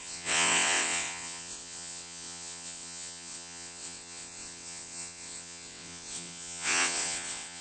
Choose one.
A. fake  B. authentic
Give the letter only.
A